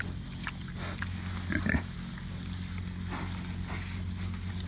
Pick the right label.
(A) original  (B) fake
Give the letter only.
A